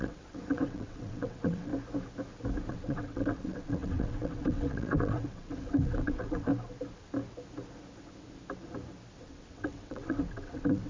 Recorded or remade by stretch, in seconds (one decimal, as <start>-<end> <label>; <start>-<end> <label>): 0.0-1.7 remade; 1.7-2.7 recorded; 2.7-6.5 remade; 6.5-9.2 recorded; 9.2-10.9 remade